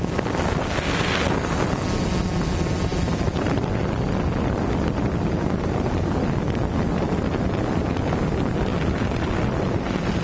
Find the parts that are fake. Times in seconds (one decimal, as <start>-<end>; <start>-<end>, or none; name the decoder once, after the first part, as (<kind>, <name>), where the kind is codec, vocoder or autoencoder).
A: 2.9-3.8 (vocoder, BigVGAN v2); 8.7-9.4